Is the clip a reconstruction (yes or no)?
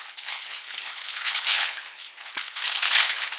yes